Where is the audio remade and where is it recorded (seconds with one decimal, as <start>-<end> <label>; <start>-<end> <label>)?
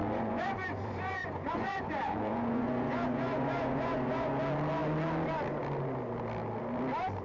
0.0-4.3 remade; 4.3-7.2 recorded